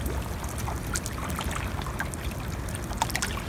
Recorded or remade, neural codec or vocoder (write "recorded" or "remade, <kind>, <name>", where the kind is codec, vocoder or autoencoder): recorded